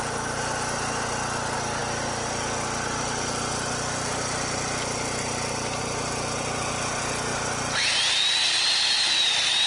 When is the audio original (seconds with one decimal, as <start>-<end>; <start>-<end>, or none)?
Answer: 0.0-9.7